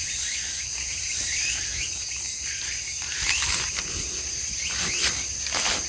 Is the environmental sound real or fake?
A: real